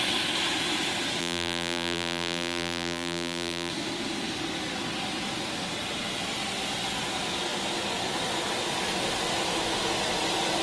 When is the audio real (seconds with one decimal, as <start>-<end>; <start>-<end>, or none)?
0.0-1.2; 3.7-10.6